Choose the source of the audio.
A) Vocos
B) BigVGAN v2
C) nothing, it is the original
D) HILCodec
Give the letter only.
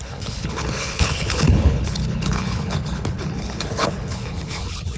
D